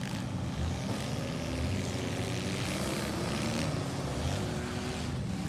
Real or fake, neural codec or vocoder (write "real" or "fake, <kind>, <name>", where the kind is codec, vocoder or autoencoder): real